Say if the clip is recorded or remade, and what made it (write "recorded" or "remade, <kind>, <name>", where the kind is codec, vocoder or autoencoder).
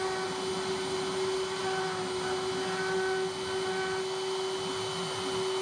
recorded